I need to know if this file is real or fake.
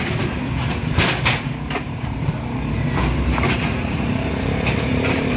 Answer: fake